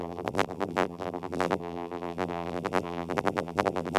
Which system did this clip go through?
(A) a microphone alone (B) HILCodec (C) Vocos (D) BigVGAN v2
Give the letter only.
D